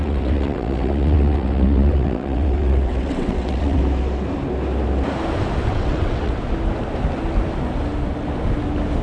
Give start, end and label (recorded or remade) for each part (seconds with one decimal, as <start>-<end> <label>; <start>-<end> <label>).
0.0-3.8 remade; 3.8-5.7 recorded; 5.7-6.4 remade; 6.4-9.0 recorded